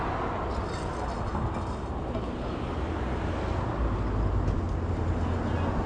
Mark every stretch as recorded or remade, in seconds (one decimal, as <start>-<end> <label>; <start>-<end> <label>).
0.0-5.9 recorded